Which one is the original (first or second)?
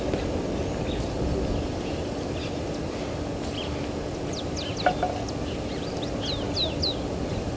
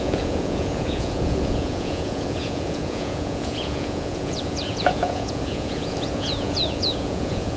first